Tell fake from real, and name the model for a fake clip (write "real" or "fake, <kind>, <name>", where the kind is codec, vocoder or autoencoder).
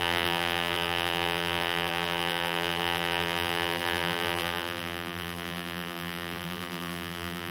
fake, vocoder, BigVGAN v2